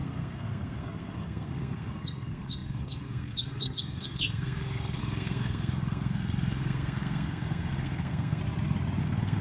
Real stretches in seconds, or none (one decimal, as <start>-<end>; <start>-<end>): 8.4-9.0